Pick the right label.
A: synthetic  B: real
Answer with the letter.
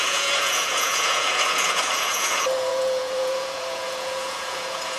A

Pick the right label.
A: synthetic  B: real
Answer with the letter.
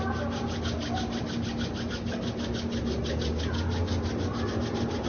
B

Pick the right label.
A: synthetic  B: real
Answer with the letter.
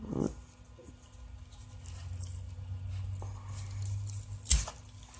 B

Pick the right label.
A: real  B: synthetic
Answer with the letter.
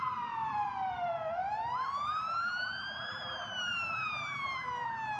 B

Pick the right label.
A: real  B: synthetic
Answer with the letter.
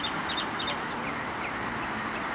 A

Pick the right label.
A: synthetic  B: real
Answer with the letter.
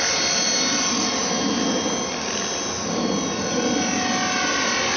B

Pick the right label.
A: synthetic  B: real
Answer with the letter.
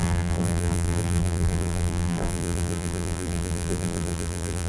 A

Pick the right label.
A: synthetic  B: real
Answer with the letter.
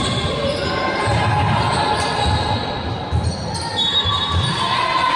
B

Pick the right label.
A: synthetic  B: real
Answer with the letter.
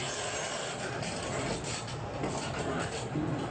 B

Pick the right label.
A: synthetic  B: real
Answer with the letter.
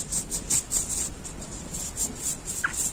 B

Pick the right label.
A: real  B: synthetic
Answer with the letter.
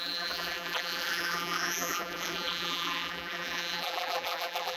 B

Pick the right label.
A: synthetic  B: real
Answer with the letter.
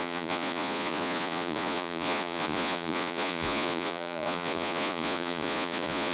A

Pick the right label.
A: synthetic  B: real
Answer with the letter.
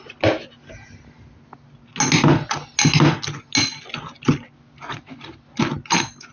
B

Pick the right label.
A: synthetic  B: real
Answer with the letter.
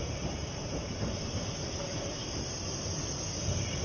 A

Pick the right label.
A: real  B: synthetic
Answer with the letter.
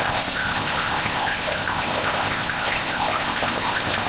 B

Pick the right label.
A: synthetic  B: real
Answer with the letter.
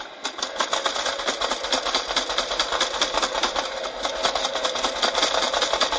B